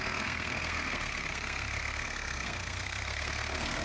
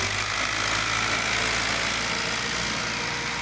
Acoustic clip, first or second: second